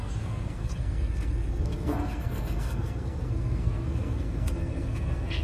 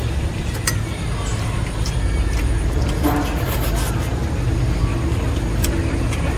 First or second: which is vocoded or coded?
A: first